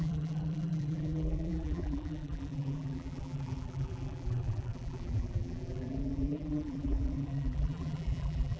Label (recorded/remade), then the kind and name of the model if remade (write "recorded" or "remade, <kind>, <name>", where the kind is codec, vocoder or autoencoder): remade, vocoder, BigVGAN v2